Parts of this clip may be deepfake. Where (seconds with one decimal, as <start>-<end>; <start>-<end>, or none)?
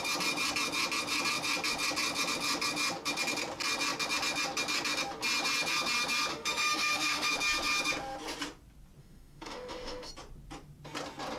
6.3-7.3; 9.0-10.1